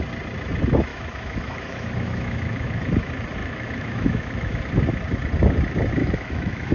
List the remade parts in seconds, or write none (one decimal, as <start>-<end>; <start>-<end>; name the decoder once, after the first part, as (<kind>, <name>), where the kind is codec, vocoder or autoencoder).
0.9-2.8 (autoencoder, DAC-VAE); 3.4-4.6; 6.0-6.7